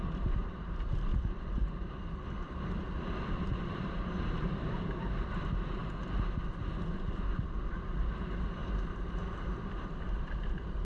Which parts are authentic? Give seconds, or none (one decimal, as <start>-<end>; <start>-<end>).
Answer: 1.1-3.6; 5.8-7.7